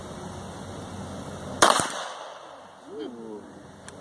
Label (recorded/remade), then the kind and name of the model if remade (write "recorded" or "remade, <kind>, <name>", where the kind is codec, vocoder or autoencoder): recorded